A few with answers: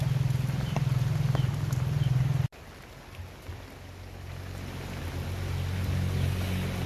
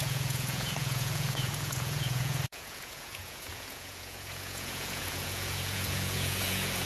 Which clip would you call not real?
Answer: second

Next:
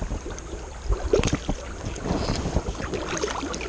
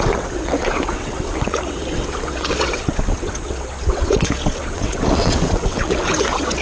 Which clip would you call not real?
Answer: second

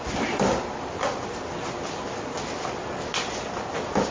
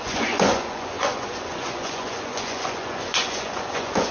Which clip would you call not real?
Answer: second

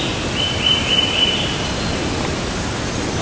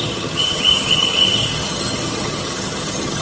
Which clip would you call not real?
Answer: second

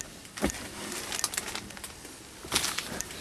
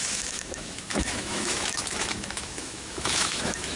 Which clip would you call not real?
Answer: second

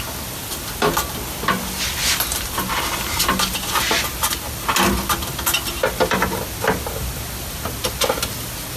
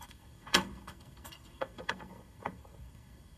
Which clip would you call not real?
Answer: second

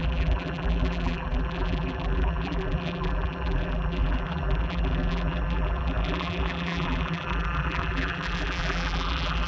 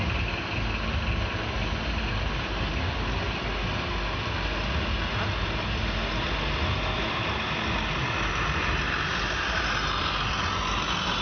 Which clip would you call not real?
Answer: first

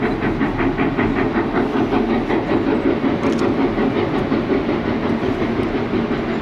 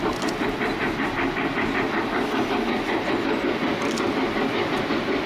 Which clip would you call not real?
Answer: second